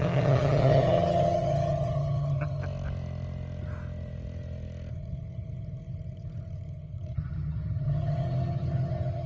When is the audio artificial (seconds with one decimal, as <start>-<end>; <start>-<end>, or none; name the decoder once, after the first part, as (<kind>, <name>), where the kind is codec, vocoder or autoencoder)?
0.0-2.6 (vocoder, HiFi-GAN); 4.9-9.3